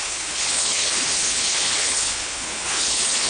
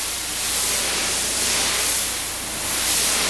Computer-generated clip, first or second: first